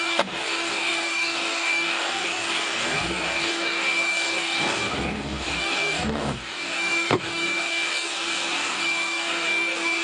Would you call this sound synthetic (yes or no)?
yes